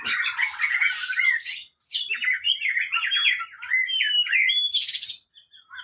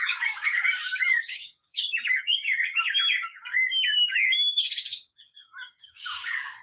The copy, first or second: second